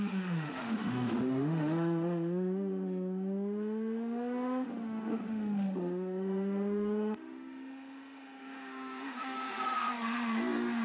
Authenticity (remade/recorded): remade